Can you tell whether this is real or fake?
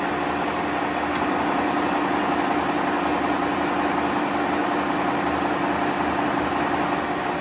real